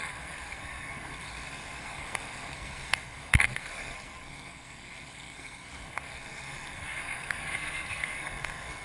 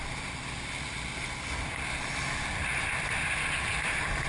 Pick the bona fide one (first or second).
second